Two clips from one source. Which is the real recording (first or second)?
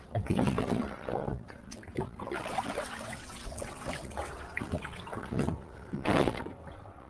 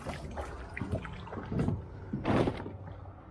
second